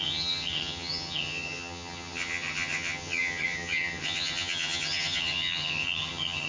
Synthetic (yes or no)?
yes